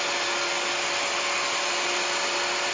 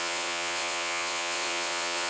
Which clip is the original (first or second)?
first